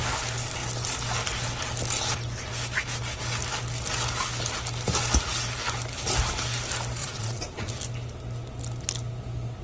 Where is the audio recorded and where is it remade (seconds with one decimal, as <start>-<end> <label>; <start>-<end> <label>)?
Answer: 0.0-7.0 recorded; 7.0-7.7 remade; 7.7-9.6 recorded